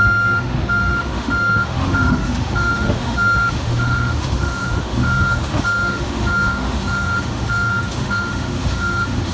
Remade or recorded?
remade